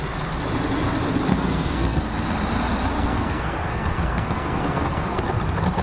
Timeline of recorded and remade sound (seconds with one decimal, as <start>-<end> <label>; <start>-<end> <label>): 0.0-1.3 recorded; 1.3-2.0 remade; 2.0-2.9 recorded; 2.9-5.2 remade; 5.2-5.8 recorded